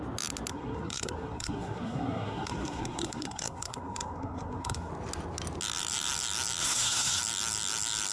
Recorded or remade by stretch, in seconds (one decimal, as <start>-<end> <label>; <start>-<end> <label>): 0.0-0.5 recorded; 0.5-4.9 remade; 4.9-6.6 recorded; 6.6-7.2 remade; 7.2-8.1 recorded